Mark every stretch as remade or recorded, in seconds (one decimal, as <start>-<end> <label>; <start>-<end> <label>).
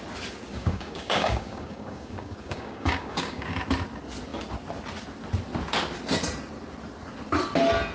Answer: 0.0-0.5 recorded; 0.5-3.6 remade; 3.6-7.9 recorded